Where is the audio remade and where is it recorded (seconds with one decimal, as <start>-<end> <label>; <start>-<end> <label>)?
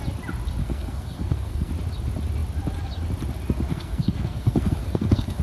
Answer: 0.0-0.6 recorded; 0.6-1.7 remade; 1.7-3.7 recorded; 3.7-5.4 remade